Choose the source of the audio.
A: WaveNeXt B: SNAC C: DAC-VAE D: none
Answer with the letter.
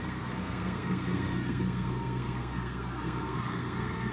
B